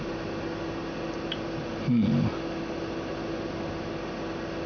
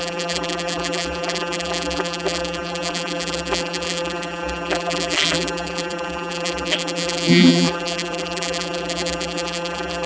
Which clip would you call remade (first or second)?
second